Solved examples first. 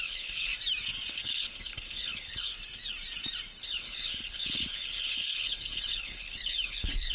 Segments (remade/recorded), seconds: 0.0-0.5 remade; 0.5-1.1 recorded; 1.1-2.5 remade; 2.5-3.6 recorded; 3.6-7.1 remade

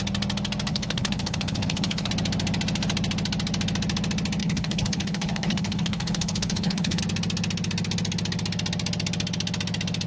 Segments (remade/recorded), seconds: 0.0-0.7 recorded; 0.7-2.1 remade; 2.1-4.4 recorded; 4.4-7.0 remade; 7.0-10.1 recorded

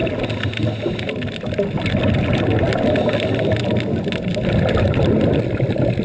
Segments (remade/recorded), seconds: 0.0-6.0 recorded

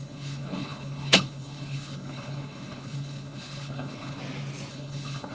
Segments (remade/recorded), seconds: 0.0-4.2 remade; 4.2-4.7 recorded; 4.7-5.3 remade

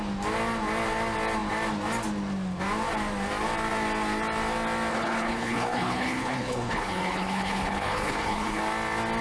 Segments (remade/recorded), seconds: 0.0-4.9 recorded; 4.9-8.6 remade; 8.6-9.2 recorded